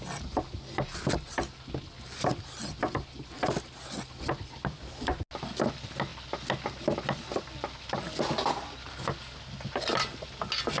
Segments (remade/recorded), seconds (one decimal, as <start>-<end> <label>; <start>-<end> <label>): 0.0-10.8 recorded